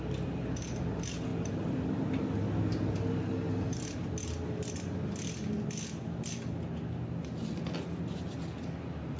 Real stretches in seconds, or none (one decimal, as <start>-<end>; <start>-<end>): 0.0-9.2